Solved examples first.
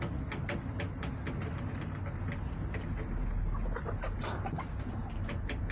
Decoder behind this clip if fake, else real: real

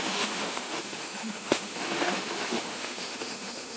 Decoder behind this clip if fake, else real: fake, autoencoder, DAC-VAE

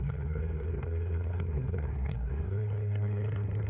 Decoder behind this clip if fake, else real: fake, codec, SNAC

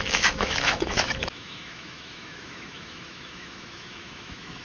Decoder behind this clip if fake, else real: fake, autoencoder, DAC-VAE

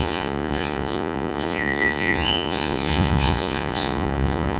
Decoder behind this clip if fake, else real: fake, vocoder, Vocos